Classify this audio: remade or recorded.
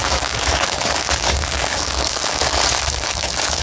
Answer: remade